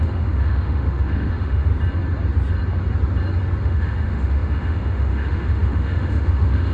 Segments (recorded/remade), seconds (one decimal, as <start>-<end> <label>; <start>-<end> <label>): 0.0-1.7 remade; 1.7-3.6 recorded; 3.6-6.7 remade